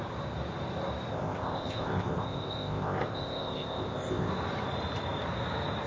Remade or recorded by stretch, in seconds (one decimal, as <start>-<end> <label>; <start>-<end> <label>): 0.0-1.1 recorded; 1.1-4.3 remade; 4.3-5.9 recorded